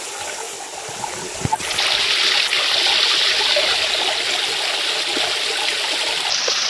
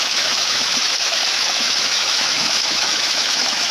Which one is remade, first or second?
second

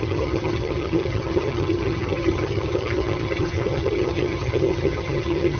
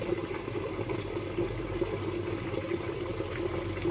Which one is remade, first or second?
first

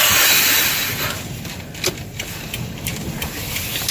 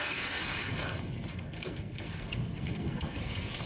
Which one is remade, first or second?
second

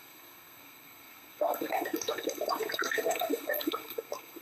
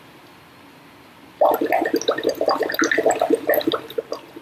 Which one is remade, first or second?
first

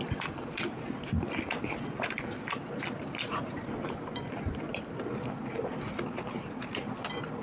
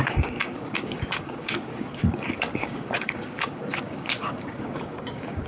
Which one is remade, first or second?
second